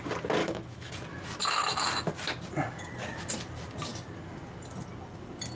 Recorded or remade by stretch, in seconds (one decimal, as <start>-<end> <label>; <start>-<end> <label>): 0.0-0.4 recorded; 0.4-0.9 remade; 0.9-5.6 recorded

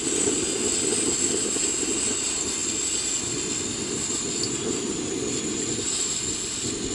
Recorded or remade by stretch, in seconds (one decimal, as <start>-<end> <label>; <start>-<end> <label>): 0.0-6.9 recorded

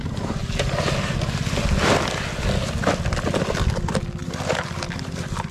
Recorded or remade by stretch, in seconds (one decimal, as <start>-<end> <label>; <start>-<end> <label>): 0.0-5.5 recorded

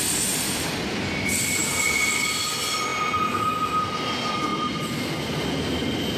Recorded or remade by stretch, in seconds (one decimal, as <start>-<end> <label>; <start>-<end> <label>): 0.0-6.2 recorded

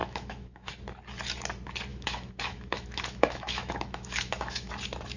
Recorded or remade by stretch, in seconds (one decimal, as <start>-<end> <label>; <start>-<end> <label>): 0.0-0.7 remade; 0.7-1.9 recorded; 1.9-4.7 remade; 4.7-5.2 recorded

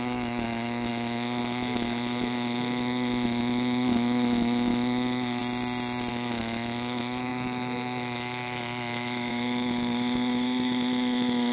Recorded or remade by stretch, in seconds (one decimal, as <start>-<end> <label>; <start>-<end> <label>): 0.0-5.4 remade; 5.4-6.1 recorded; 6.1-11.5 remade

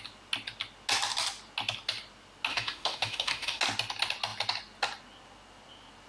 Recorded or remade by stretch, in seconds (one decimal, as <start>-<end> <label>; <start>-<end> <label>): 0.0-2.5 recorded; 2.5-3.6 remade; 3.6-6.1 recorded